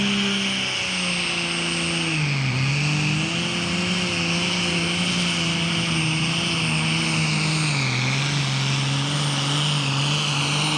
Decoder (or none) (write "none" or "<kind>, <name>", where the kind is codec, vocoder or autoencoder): none